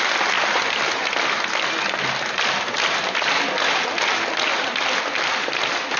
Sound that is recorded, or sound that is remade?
recorded